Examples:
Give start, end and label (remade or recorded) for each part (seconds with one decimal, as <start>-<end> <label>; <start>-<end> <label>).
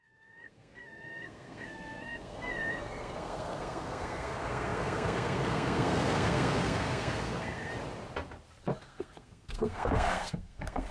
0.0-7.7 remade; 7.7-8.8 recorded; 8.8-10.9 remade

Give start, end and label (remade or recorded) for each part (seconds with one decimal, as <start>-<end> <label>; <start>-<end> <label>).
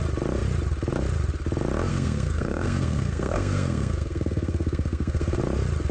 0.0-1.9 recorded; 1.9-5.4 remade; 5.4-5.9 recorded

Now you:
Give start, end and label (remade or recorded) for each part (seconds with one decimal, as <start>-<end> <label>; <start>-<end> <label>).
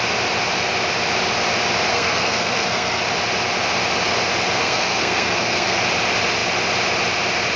0.0-1.9 recorded; 1.9-3.0 remade; 3.0-4.6 recorded; 4.6-5.8 remade; 5.8-7.6 recorded